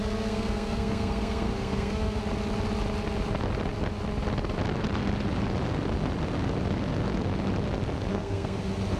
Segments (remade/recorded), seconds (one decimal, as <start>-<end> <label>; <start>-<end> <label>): 0.0-2.2 remade; 2.2-8.1 recorded; 8.1-8.6 remade; 8.6-9.0 recorded